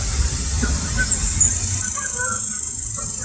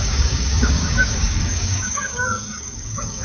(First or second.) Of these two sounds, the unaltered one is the first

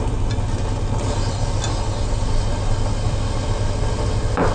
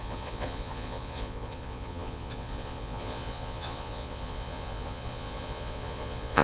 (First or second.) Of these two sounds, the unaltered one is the first